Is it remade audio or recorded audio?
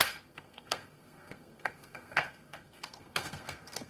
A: remade